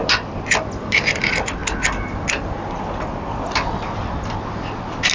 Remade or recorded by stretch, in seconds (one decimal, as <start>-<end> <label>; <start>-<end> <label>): 0.0-1.6 remade; 1.6-5.1 recorded